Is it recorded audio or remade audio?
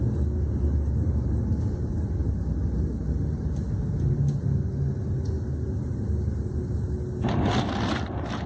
recorded